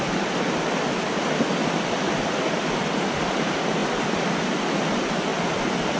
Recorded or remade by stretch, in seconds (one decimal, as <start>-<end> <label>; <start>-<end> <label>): 0.0-3.8 recorded; 3.8-4.6 remade; 4.6-5.3 recorded; 5.3-6.0 remade